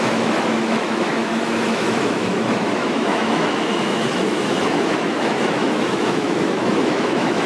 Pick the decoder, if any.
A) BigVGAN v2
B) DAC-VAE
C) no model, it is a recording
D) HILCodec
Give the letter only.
B